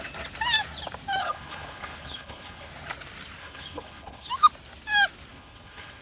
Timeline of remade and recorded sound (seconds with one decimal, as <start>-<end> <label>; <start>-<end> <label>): 0.0-1.2 recorded; 1.2-2.7 remade; 2.7-3.4 recorded; 3.4-4.3 remade; 4.3-5.3 recorded; 5.3-6.0 remade